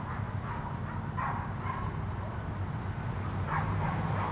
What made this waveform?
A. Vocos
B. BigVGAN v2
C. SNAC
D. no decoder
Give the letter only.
B